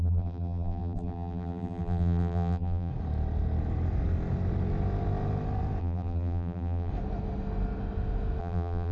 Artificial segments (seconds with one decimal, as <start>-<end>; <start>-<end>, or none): 0.0-2.9; 5.8-6.9; 8.4-8.9